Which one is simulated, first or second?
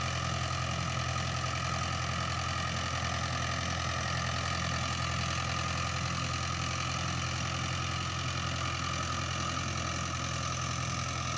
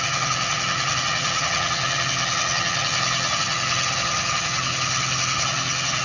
second